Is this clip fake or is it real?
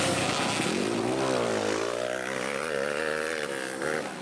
real